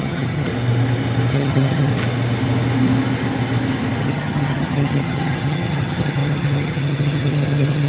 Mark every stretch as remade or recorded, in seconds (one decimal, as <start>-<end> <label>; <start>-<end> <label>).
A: 0.0-0.5 remade; 0.5-1.3 recorded; 1.3-1.9 remade; 1.9-4.0 recorded; 4.0-7.9 remade